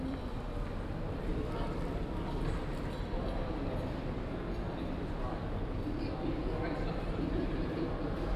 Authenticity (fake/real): real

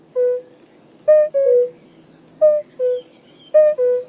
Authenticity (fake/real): fake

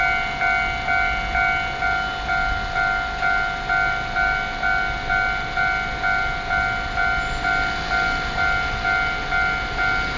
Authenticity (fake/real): real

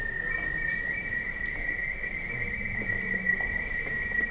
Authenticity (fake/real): real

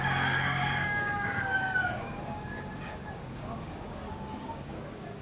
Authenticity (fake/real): fake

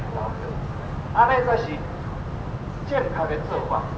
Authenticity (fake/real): real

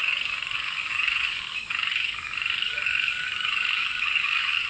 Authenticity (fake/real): fake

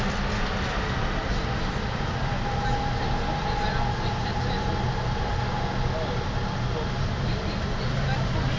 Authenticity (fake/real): real